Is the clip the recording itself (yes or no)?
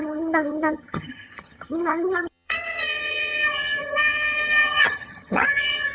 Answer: no